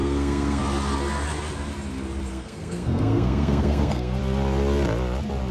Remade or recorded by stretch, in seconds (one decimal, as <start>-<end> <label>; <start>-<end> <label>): 0.0-0.6 remade; 0.6-2.3 recorded; 2.3-4.2 remade; 4.2-5.5 recorded